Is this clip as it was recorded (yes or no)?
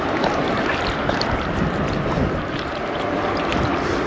no